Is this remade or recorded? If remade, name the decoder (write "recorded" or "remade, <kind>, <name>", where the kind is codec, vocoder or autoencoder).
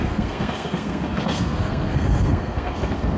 remade, codec, SNAC